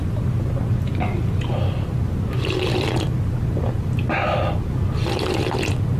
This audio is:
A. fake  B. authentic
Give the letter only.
B